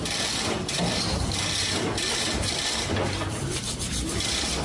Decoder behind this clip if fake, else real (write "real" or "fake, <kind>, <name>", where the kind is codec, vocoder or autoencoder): fake, vocoder, BigVGAN v2